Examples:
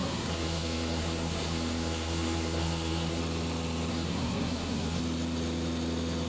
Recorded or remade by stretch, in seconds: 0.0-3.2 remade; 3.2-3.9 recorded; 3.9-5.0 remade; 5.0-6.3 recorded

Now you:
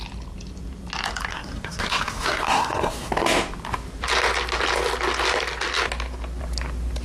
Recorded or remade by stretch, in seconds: 0.0-1.3 recorded; 1.3-3.1 remade; 3.1-7.0 recorded

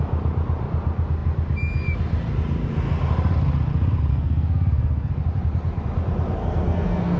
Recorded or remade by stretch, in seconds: 0.0-4.1 recorded; 4.1-5.1 remade; 5.1-6.4 recorded; 6.4-7.2 remade

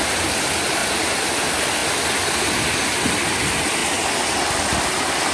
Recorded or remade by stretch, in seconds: 0.0-5.3 recorded

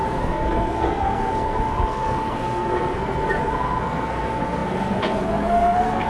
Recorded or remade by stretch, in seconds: 0.0-6.1 remade